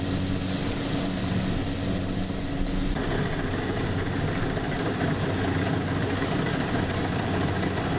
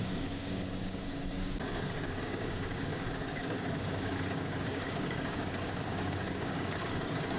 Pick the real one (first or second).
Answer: first